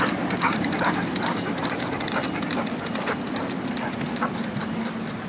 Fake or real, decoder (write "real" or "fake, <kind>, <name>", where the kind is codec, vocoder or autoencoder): real